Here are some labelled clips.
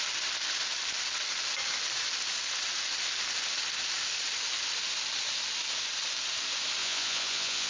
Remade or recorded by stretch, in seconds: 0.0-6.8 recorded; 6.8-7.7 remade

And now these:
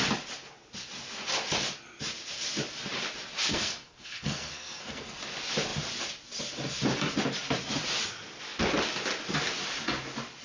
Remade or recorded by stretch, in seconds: 0.0-3.5 recorded; 3.5-5.2 remade; 5.2-10.4 recorded

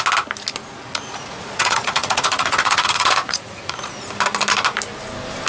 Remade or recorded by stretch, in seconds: 0.0-0.6 recorded; 0.6-3.9 remade; 3.9-5.5 recorded

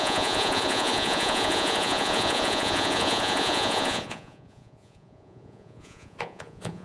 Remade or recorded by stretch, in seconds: 0.0-6.8 remade

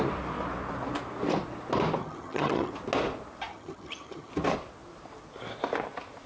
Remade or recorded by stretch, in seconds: 0.0-2.0 recorded; 2.0-2.7 remade; 2.7-3.5 recorded; 3.5-4.3 remade; 4.3-6.3 recorded